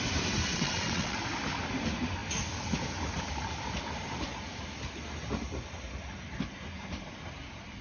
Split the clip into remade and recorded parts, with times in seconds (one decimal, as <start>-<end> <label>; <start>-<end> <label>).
0.0-0.5 recorded; 0.5-1.2 remade; 1.2-7.8 recorded